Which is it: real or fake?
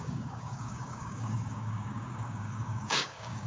fake